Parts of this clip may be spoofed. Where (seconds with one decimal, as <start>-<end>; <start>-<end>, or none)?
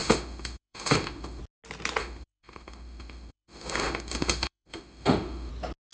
0.0-1.4; 2.0-5.5